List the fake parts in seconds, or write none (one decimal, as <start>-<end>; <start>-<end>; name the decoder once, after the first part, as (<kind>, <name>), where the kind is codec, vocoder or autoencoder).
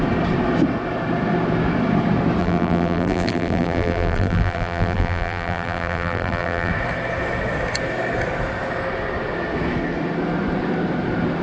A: 2.4-6.7 (vocoder, BigVGAN v2)